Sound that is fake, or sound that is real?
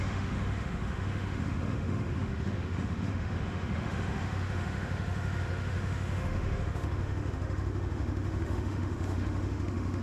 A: fake